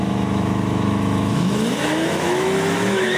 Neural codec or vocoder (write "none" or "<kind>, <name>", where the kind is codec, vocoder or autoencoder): autoencoder, DAC-VAE